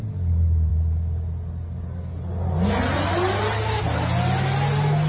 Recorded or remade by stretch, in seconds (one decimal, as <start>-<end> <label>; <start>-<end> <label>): 0.0-5.1 recorded